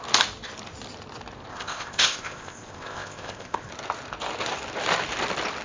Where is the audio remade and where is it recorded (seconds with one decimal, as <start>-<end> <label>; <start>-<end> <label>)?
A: 0.0-1.5 recorded; 1.5-3.7 remade; 3.7-5.6 recorded